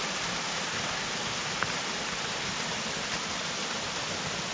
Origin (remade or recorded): recorded